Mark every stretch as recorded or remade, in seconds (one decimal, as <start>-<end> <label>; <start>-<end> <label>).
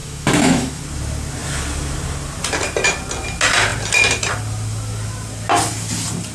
0.0-0.8 remade; 0.8-6.3 recorded